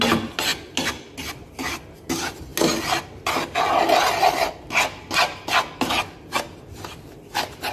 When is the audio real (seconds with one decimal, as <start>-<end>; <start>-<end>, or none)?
0.0-7.7